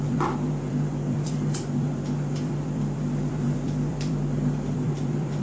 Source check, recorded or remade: remade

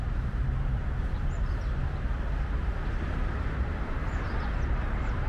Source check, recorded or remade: remade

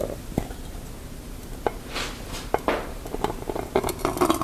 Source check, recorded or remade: recorded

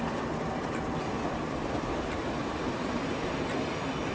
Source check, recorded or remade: recorded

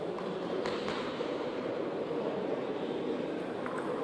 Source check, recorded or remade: remade